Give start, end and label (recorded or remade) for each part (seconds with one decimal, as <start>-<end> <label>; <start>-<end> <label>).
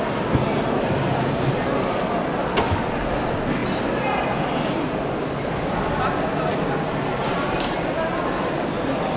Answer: 0.0-9.2 recorded